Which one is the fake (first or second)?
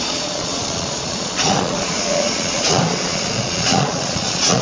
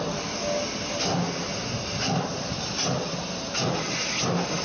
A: first